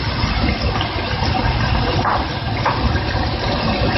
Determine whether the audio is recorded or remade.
recorded